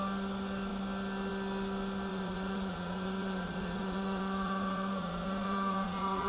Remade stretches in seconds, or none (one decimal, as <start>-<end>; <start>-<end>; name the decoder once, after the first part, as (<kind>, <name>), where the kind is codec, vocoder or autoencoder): 2.1-6.3 (vocoder, Vocos)